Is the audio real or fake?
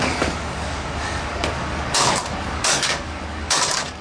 fake